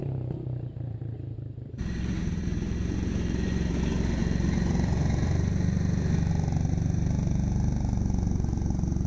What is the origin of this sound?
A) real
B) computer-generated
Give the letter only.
B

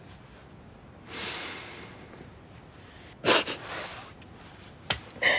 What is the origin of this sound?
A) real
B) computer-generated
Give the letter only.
A